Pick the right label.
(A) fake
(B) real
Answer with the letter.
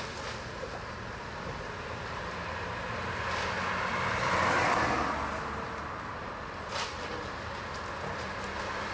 B